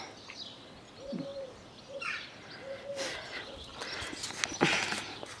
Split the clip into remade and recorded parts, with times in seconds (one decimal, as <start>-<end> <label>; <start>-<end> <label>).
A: 0.0-5.4 recorded

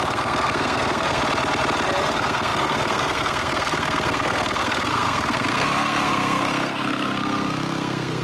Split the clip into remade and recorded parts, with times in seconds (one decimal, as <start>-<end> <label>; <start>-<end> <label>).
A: 0.0-1.2 remade; 1.2-2.0 recorded; 2.0-8.2 remade

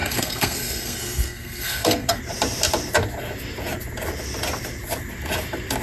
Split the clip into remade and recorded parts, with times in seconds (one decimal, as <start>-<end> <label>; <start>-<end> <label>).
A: 0.0-2.2 remade; 2.2-5.8 recorded

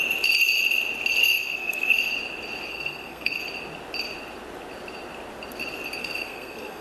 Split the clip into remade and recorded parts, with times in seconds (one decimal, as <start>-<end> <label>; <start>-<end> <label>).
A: 0.0-1.2 recorded; 1.2-2.1 remade; 2.1-2.7 recorded; 2.7-3.4 remade; 3.4-6.0 recorded; 6.0-6.8 remade

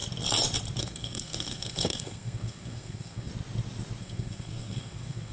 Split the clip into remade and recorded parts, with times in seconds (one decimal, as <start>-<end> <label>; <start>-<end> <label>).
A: 0.0-0.8 recorded; 0.8-3.3 remade; 3.3-4.0 recorded; 4.0-5.3 remade

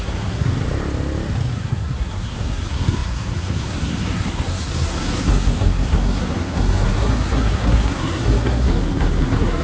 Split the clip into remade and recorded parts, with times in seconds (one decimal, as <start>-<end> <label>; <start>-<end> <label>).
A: 0.0-0.5 remade; 0.5-1.5 recorded; 1.5-9.6 remade